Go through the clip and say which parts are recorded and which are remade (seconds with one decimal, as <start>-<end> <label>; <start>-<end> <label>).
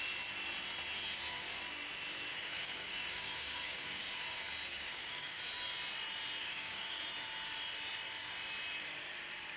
0.0-2.3 recorded; 2.3-4.0 remade; 4.0-4.7 recorded; 4.7-5.4 remade; 5.4-6.4 recorded; 6.4-7.0 remade; 7.0-9.6 recorded